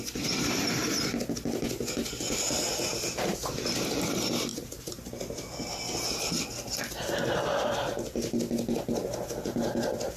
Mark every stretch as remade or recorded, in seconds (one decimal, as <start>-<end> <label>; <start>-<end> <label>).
0.0-4.5 recorded; 4.5-5.1 remade; 5.1-10.2 recorded